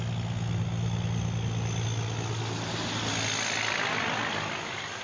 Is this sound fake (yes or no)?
no